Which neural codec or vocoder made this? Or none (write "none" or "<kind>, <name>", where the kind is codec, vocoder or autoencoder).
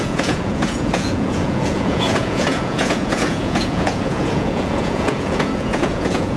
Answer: vocoder, Vocos